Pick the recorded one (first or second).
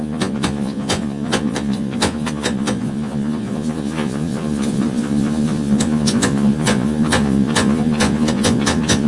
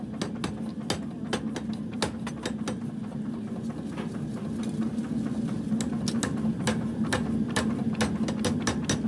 second